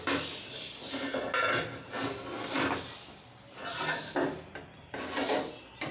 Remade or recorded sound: recorded